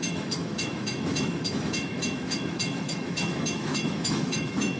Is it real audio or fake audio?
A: fake